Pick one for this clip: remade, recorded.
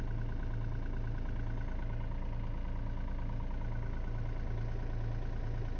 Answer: recorded